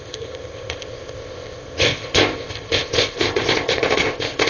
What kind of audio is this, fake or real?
fake